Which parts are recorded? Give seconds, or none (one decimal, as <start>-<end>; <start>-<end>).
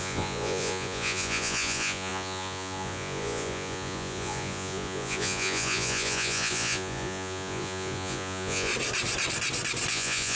8.7-9.9